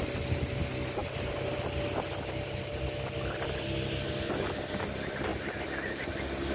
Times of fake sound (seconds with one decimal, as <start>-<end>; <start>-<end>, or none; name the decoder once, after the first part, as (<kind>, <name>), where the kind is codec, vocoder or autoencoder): 5.3-6.0 (vocoder, BigVGAN v2)